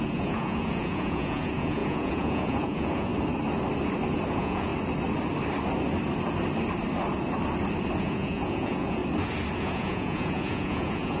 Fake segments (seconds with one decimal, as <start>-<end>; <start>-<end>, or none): 0.0-3.1; 4.3-4.7; 8.0-9.0; 9.6-11.2